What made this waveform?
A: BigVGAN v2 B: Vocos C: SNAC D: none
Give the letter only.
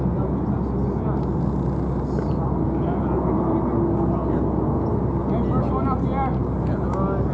D